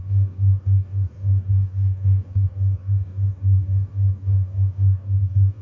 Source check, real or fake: fake